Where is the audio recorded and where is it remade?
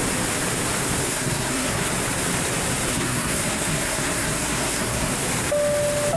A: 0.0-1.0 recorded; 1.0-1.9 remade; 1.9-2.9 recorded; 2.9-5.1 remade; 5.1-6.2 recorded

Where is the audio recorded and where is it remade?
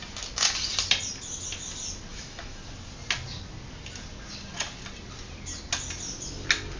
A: 0.0-2.1 recorded; 2.1-2.6 remade; 2.6-6.8 recorded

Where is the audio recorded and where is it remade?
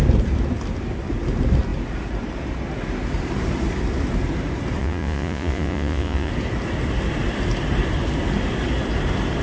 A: 0.0-4.8 recorded; 4.8-6.3 remade; 6.3-9.4 recorded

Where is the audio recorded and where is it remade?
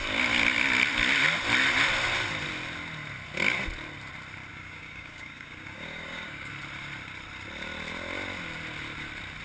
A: 0.0-4.5 recorded; 4.5-6.5 remade; 6.5-9.4 recorded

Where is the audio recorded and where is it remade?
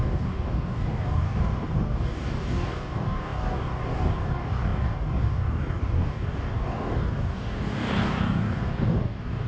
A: 0.0-9.5 remade